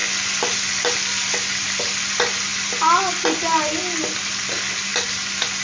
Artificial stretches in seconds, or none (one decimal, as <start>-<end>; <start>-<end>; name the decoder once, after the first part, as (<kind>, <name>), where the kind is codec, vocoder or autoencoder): none